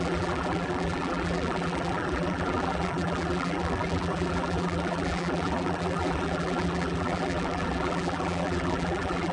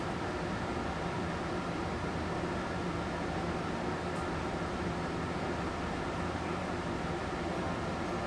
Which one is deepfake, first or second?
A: first